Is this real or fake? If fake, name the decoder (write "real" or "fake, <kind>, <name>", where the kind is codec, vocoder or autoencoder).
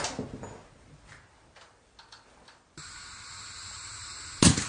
real